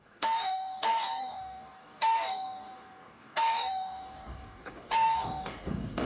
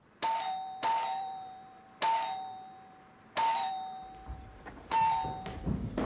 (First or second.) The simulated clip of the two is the first